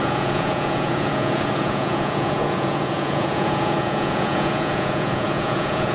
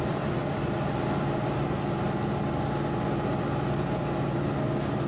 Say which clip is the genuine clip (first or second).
second